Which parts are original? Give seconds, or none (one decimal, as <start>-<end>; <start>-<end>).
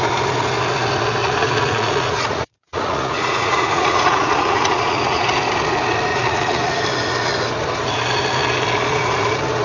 0.0-1.2; 5.2-6.1; 6.8-9.6